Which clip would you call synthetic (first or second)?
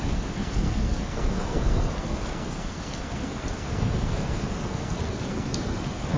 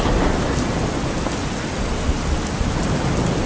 first